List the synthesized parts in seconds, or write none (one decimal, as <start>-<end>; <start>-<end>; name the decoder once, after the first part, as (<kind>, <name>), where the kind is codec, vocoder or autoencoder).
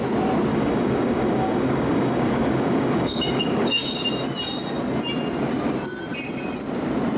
0.5-4.1 (codec, DAC)